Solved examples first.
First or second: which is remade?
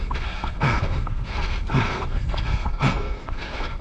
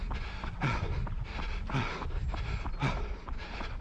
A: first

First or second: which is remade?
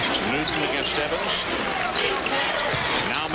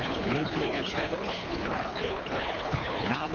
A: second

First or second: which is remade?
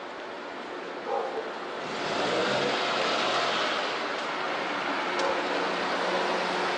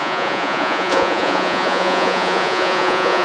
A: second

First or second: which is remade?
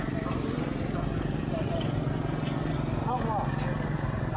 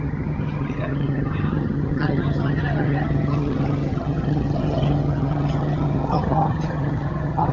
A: second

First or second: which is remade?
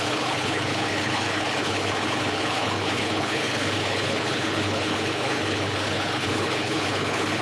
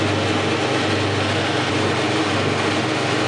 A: first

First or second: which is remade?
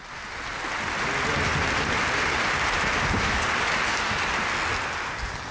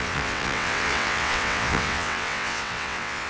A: second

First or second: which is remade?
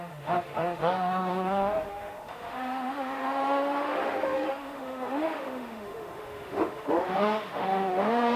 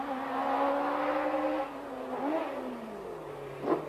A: first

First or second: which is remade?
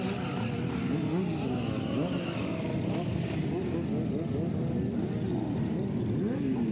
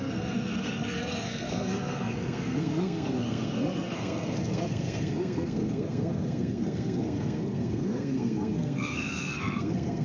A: second